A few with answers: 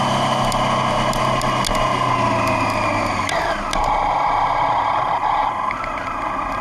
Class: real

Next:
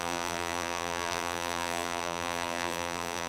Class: fake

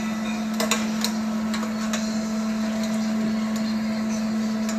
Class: real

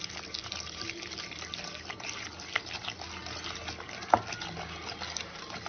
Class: real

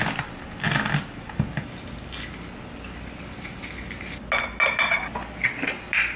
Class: real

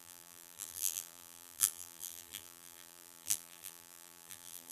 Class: fake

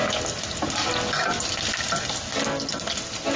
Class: real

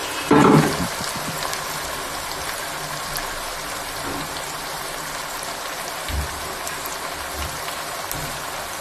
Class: fake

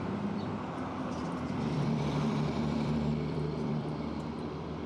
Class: fake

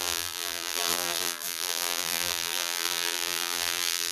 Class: fake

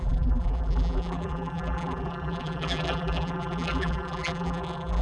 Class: fake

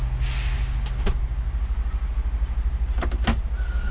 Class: real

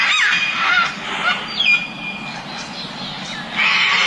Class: real